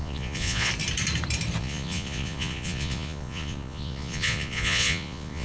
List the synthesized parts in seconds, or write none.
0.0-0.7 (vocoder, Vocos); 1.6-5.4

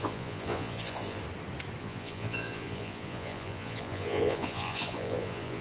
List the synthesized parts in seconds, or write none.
0.0-1.2 (vocoder, Vocos); 1.8-5.6

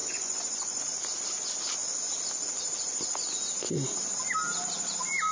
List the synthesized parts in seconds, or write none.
0.0-0.8 (vocoder, Vocos)

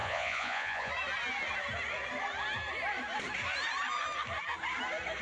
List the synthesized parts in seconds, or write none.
0.0-0.9 (vocoder, Vocos)

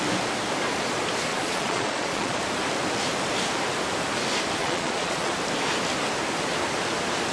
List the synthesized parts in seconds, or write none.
1.3-2.4 (vocoder, Vocos); 4.6-5.3

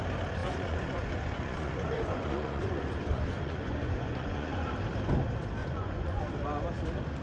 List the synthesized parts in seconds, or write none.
0.4-4.7 (vocoder, Vocos); 5.6-6.2